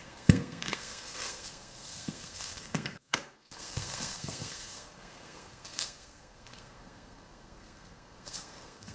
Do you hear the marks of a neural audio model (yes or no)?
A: yes